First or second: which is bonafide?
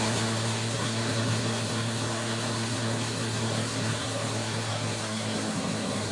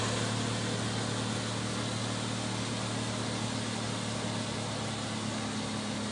second